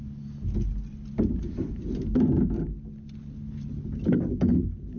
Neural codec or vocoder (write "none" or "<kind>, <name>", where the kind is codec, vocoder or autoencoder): none